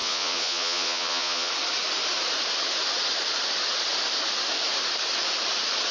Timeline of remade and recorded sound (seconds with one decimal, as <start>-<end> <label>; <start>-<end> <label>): 0.0-1.5 remade; 1.5-5.9 recorded